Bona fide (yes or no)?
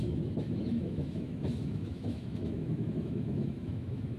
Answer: no